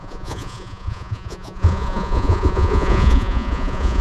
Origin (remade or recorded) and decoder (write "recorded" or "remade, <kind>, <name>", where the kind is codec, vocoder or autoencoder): remade, vocoder, Vocos